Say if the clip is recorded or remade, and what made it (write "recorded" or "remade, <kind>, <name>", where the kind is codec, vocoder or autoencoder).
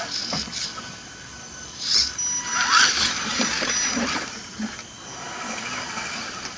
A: recorded